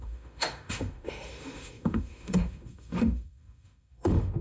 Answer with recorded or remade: remade